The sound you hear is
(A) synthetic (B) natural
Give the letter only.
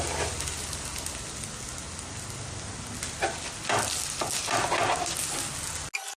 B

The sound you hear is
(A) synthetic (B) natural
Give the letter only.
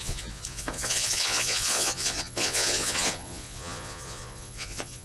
A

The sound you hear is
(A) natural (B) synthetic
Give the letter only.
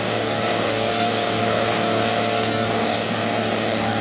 B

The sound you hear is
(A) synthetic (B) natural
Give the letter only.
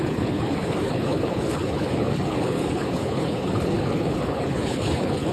A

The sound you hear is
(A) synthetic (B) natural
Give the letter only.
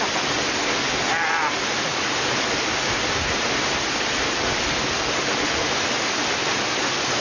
B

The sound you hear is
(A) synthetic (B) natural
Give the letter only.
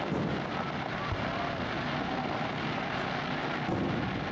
B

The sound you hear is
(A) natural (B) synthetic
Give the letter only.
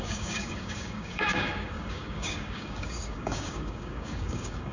B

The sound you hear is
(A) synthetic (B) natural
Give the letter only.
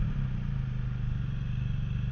B